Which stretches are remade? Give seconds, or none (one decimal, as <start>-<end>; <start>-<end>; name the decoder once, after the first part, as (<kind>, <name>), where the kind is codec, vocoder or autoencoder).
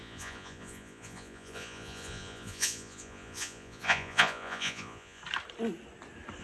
0.0-5.2 (vocoder, Vocos)